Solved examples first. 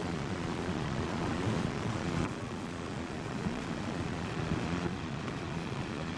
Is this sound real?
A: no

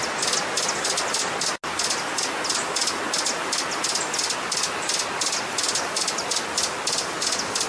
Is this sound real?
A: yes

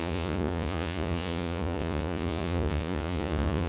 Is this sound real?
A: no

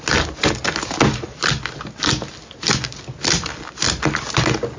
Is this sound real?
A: yes